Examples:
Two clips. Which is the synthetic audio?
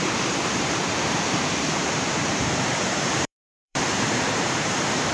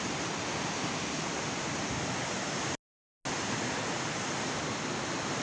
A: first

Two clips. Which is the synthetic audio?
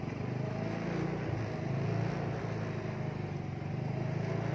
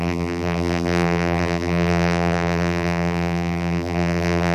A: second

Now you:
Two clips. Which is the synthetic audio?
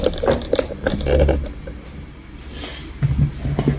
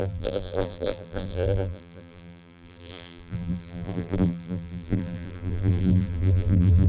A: second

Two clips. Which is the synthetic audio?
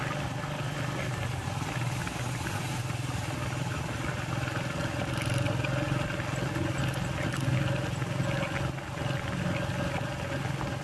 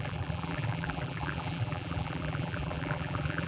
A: second